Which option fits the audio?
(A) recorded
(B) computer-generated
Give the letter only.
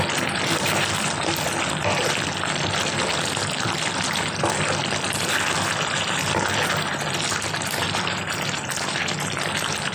A